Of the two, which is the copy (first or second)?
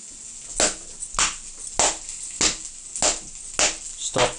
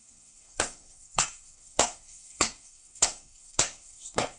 second